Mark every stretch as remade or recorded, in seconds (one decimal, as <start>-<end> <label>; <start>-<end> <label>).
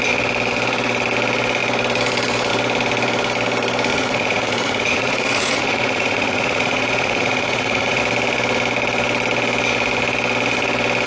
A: 0.0-3.9 recorded; 3.9-8.0 remade; 8.0-11.1 recorded